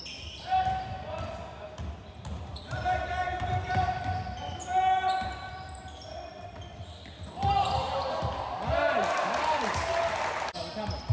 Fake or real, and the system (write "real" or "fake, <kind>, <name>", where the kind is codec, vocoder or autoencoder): real